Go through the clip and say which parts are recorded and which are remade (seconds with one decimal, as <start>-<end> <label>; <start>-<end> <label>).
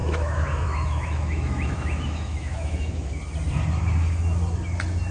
0.0-3.1 remade; 3.1-5.1 recorded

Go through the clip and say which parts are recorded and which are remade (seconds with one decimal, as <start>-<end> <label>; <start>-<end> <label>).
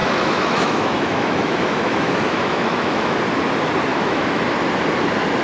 0.0-3.2 remade; 3.2-3.9 recorded; 3.9-4.4 remade; 4.4-5.4 recorded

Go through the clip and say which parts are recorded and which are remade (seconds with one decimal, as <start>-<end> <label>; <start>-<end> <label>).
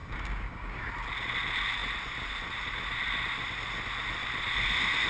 0.0-0.9 remade; 0.9-5.1 recorded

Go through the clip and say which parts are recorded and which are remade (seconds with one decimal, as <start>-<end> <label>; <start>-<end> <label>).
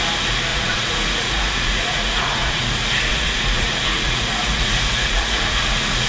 0.0-0.5 recorded; 0.5-2.6 remade; 2.6-3.1 recorded; 3.1-6.1 remade